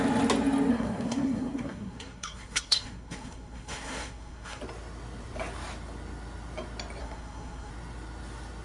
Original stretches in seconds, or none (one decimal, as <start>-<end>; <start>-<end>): 0.0-0.7; 4.6-7.0; 7.7-8.6